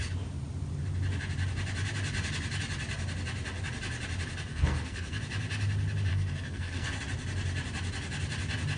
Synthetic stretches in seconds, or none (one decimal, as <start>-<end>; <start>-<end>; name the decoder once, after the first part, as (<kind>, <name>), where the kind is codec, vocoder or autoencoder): 4.5-5.2 (codec, SNAC); 6.1-7.0